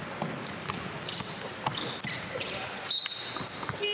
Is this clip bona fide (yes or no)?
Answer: yes